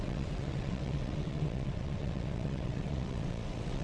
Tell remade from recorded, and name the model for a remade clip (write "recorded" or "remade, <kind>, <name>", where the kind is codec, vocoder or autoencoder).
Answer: remade, vocoder, WaveNeXt